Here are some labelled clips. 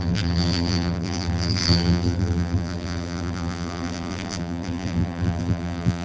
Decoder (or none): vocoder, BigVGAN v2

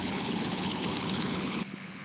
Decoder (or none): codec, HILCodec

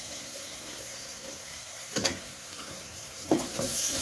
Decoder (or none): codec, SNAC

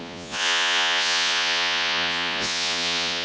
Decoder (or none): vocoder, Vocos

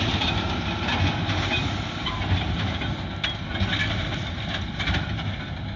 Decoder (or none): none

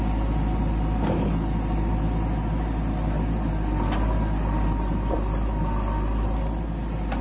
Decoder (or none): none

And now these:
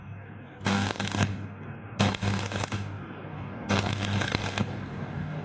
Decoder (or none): codec, DAC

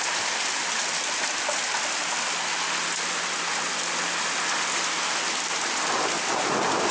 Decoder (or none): none